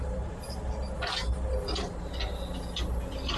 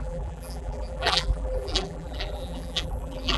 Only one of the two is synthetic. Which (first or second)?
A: second